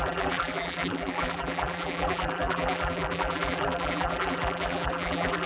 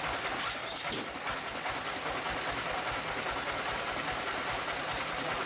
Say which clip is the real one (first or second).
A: second